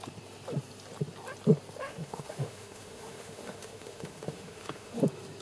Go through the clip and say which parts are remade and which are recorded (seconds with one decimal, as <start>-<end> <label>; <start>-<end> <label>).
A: 0.0-1.8 recorded; 1.8-5.0 remade; 5.0-5.4 recorded